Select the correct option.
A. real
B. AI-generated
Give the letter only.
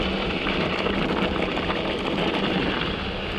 A